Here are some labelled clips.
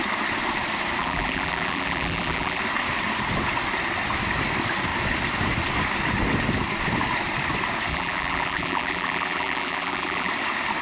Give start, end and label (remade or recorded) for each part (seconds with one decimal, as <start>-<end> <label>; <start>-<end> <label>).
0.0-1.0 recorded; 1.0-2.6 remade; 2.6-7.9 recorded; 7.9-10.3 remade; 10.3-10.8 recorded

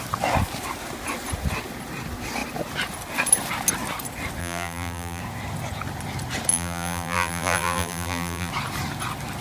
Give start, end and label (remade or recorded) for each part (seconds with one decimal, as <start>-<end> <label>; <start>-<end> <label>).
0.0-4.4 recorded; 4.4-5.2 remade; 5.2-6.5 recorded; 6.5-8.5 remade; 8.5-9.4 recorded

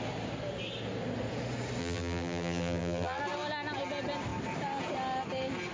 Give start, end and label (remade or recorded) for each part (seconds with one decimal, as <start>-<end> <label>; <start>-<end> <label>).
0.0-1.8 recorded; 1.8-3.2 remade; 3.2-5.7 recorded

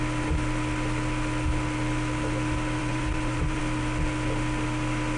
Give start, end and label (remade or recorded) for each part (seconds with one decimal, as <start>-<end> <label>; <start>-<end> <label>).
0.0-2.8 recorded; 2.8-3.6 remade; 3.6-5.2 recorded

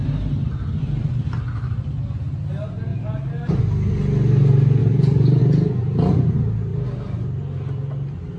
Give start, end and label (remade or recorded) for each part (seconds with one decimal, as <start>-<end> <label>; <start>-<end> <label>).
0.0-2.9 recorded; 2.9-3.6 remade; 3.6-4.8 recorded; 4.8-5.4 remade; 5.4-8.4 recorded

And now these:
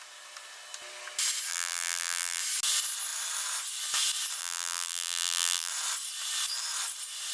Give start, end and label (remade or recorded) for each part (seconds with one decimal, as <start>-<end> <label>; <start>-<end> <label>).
0.0-1.5 recorded; 1.5-2.4 remade; 2.4-4.4 recorded; 4.4-5.7 remade; 5.7-7.3 recorded

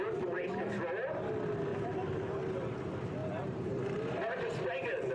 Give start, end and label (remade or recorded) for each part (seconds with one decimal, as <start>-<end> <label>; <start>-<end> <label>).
0.0-1.7 recorded; 1.7-2.4 remade; 2.4-3.2 recorded; 3.2-3.7 remade; 3.7-5.1 recorded

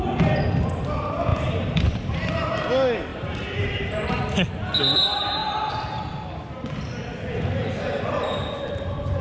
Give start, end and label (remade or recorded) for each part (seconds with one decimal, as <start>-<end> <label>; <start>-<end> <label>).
0.0-1.3 recorded; 1.3-2.3 remade; 2.3-3.1 recorded; 3.1-4.1 remade; 4.1-9.2 recorded